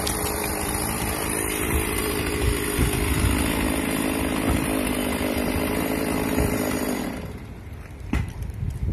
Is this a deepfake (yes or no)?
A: yes